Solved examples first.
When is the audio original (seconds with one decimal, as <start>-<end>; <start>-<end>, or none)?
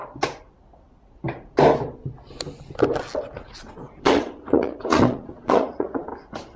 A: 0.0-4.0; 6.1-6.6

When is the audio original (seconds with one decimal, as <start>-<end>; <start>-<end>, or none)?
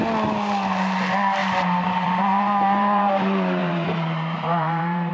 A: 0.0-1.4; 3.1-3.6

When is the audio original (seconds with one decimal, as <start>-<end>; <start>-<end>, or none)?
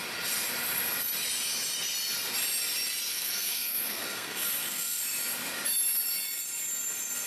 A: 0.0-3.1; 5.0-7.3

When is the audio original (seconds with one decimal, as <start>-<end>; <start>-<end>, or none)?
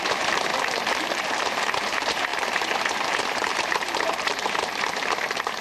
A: 0.5-1.2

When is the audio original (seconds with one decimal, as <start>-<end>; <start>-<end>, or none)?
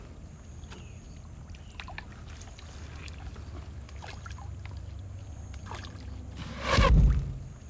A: 0.0-7.7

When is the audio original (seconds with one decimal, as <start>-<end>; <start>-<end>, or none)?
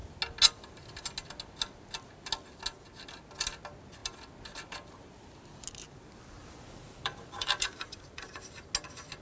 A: 0.0-6.4; 8.7-9.2